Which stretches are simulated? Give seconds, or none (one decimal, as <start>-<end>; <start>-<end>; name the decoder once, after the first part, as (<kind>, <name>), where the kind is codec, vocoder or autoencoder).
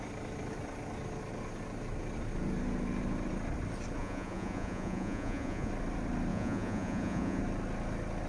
4.0-5.7 (vocoder, Vocos); 6.3-7.4